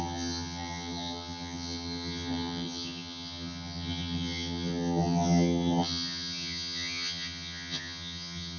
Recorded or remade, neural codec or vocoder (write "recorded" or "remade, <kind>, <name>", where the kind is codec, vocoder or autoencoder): remade, vocoder, HiFi-GAN